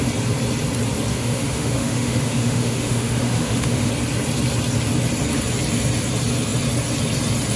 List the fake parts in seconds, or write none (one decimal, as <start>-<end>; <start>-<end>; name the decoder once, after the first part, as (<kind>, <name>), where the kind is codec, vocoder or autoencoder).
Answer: 1.1-3.9 (autoencoder, DAC-VAE)